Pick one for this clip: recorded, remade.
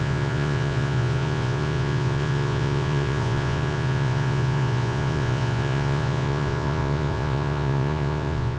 remade